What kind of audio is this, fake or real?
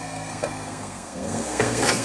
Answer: fake